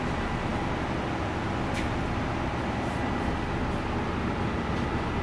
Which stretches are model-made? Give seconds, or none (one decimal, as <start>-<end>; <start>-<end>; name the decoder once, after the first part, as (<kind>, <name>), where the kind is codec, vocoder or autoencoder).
none